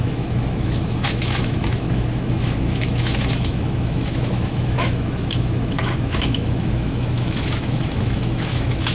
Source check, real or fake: fake